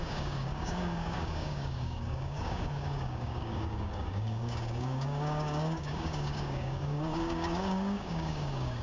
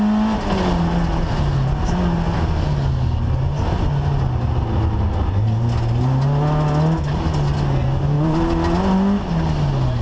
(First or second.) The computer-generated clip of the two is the first